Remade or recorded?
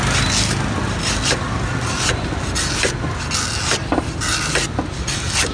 recorded